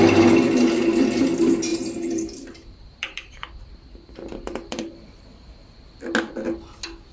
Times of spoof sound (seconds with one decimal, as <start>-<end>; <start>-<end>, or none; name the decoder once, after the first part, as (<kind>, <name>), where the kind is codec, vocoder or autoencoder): 1.7-4.9 (vocoder, BigVGAN v2)